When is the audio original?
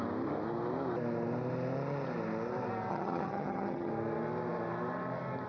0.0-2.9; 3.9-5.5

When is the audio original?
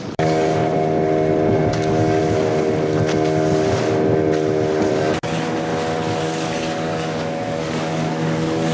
0.6-1.7; 2.2-4.9; 5.7-6.2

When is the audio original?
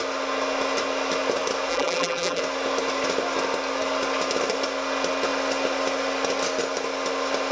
0.0-1.7; 2.4-7.5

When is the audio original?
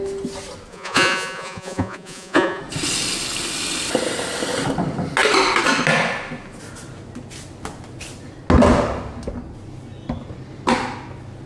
0.0-0.7; 2.6-11.5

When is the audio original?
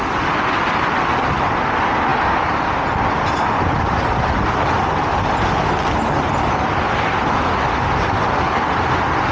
0.0-9.3